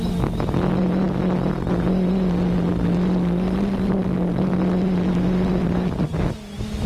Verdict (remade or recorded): recorded